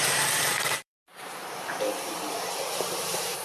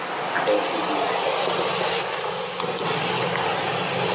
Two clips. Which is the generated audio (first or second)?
first